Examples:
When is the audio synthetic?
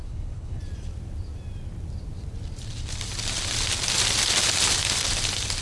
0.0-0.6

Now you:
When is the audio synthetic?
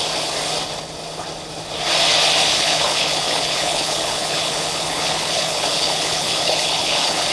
2.5-7.3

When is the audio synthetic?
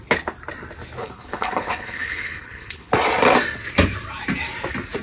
1.0-2.9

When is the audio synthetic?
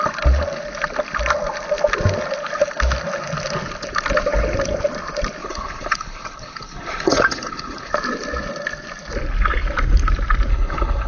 5.4-7.9; 10.5-11.1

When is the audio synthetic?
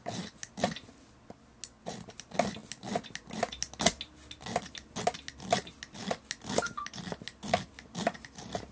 none